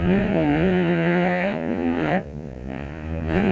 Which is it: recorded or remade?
remade